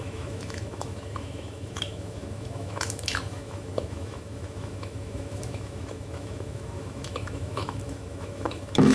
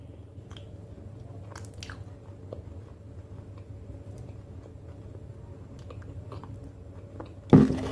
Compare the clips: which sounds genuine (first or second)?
second